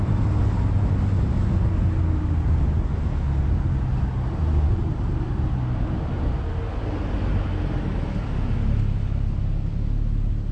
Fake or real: real